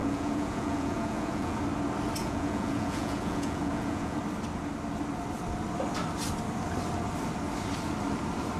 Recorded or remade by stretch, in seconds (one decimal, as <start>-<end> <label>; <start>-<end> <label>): 0.0-1.6 remade; 1.6-2.2 recorded; 2.2-4.2 remade; 4.2-8.6 recorded